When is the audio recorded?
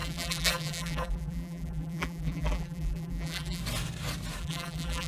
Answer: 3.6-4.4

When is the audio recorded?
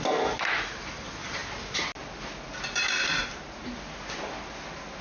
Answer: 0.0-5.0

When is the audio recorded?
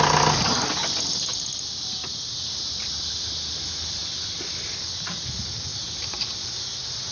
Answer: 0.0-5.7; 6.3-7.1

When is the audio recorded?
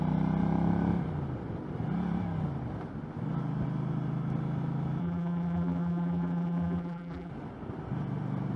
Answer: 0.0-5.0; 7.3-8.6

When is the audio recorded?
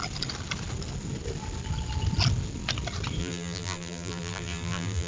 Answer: 0.0-3.2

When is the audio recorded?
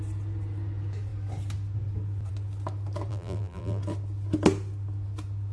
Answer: 0.0-3.1; 3.8-5.5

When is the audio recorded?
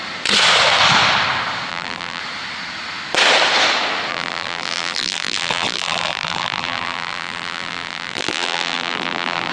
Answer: 0.0-1.7; 2.2-4.1